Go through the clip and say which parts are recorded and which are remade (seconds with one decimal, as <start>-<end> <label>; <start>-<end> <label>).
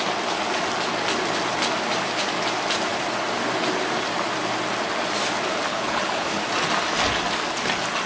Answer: 0.0-5.7 recorded; 5.7-6.4 remade; 6.4-8.1 recorded